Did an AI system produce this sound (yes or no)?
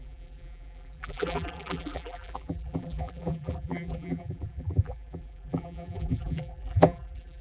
yes